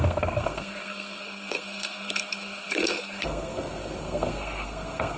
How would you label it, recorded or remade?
remade